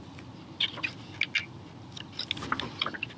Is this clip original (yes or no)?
yes